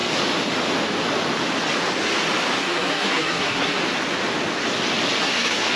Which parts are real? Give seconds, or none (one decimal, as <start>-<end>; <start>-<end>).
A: 0.0-2.6; 3.8-5.2